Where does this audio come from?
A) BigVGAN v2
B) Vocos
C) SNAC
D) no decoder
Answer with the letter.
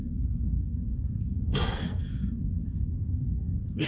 C